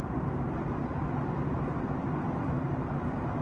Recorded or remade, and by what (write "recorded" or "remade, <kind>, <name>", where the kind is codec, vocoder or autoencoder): remade, vocoder, BigVGAN v2